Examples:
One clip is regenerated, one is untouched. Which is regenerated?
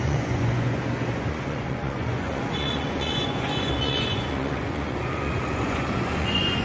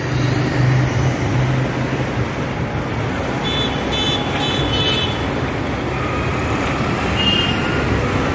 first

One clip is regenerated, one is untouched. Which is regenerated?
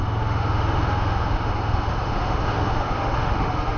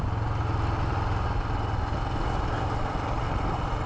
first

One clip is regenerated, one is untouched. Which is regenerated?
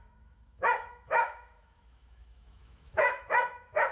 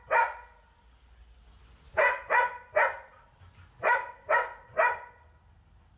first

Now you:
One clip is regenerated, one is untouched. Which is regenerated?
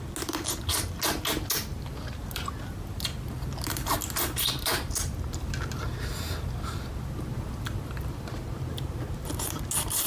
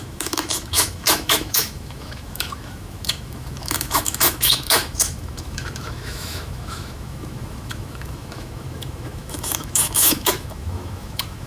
second